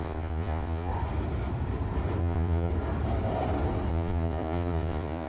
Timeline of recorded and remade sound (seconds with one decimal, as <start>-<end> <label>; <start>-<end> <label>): 0.0-0.9 remade; 0.9-2.2 recorded; 2.2-2.7 remade; 2.7-3.9 recorded; 3.9-5.3 remade